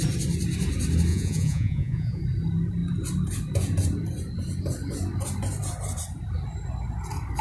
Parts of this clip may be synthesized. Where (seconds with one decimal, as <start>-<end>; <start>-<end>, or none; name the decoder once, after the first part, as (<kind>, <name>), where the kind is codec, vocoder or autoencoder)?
1.1-2.2 (vocoder, Vocos)

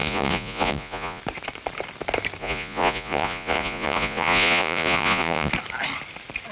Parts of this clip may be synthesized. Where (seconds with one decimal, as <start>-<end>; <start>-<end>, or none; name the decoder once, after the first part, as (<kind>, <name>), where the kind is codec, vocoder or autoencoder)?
0.0-1.2 (vocoder, Vocos); 2.4-5.5

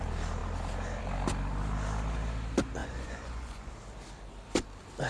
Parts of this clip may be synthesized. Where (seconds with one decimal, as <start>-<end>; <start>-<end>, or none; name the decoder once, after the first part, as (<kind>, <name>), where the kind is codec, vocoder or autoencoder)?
2.8-3.7 (vocoder, Vocos)

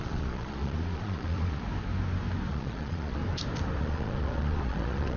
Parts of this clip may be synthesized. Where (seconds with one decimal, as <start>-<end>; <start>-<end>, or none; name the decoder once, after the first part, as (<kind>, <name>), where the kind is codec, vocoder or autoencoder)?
0.0-1.6 (vocoder, Vocos); 2.5-3.2; 3.8-5.2

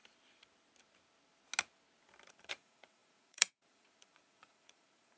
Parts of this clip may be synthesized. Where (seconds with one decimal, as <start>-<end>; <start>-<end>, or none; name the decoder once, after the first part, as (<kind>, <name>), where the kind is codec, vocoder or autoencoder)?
2.3-5.2 (vocoder, Vocos)